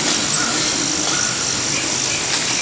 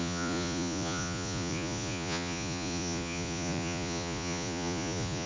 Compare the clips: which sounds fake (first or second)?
second